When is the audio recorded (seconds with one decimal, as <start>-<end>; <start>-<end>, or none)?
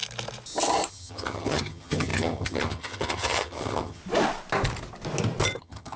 0.0-0.9; 4.0-5.6